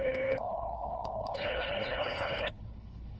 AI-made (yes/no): yes